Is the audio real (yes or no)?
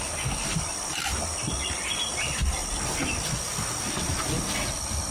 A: yes